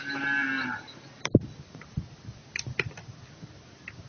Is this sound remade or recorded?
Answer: recorded